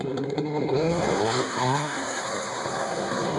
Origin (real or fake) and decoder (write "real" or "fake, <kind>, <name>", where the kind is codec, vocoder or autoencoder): fake, codec, SNAC